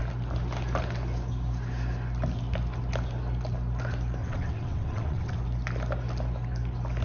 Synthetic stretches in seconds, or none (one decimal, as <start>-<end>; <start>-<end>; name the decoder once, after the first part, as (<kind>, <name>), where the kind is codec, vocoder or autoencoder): 4.2-5.3 (vocoder, WaveNeXt)